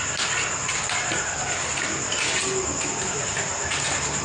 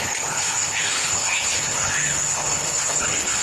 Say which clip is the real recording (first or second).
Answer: first